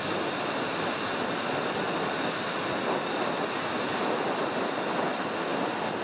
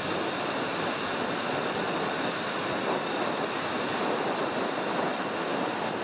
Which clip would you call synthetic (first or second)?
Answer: second